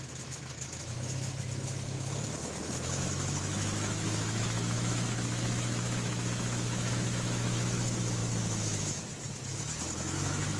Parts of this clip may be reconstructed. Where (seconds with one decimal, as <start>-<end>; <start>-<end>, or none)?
0.0-10.6